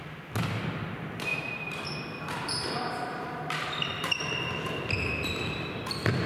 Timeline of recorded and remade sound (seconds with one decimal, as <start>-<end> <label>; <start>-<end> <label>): 0.0-1.3 recorded; 1.3-4.8 remade; 4.8-6.3 recorded